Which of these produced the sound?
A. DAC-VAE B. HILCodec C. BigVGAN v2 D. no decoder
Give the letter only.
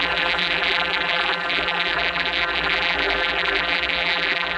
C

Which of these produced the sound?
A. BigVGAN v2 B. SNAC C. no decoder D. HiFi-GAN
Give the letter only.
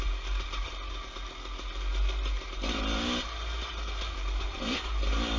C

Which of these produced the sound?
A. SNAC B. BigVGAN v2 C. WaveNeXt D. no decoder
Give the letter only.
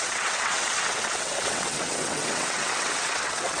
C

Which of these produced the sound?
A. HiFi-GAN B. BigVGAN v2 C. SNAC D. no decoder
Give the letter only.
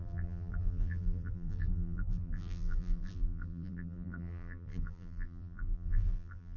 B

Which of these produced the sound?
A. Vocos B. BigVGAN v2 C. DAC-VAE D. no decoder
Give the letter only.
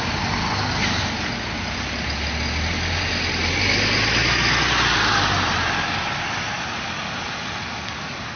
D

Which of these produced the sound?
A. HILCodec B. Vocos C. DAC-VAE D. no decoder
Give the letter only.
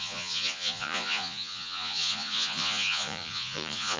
B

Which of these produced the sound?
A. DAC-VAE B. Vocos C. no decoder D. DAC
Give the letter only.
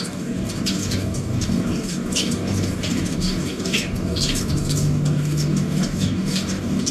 D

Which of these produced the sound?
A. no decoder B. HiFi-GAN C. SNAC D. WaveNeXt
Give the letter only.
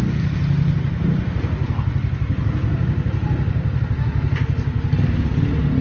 A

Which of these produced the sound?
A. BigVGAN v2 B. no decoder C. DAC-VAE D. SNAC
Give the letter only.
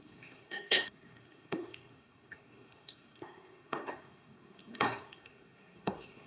D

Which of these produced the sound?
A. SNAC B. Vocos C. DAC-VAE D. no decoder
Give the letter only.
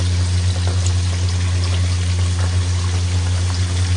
D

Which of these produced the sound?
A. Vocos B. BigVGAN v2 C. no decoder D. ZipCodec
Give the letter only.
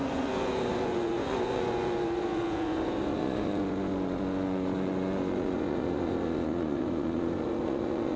A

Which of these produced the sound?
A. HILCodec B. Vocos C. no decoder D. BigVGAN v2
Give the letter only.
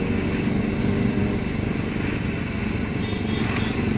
C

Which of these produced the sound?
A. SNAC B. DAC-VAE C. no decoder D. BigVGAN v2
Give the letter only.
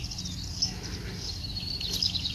C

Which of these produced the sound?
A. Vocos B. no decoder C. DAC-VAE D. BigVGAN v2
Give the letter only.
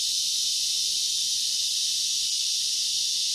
B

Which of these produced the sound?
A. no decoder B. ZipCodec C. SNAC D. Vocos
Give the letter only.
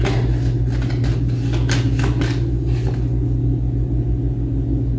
A